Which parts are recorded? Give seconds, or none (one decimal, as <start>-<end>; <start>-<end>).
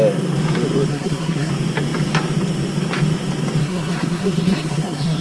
0.0-0.9; 1.5-3.6